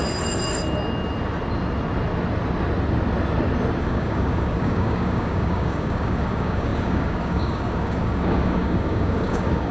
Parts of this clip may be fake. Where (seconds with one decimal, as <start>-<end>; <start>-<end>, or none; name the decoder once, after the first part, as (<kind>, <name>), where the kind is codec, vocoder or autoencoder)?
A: 3.8-9.7 (codec, DAC)